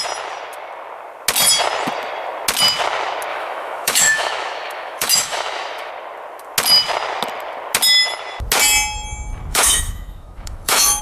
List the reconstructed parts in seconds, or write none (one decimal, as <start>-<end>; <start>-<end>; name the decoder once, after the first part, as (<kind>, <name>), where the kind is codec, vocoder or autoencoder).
3.3-5.9 (autoencoder, DAC-VAE); 9.5-11.0